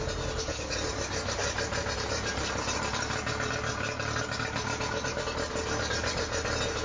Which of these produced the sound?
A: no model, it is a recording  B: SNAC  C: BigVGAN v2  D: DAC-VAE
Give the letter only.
A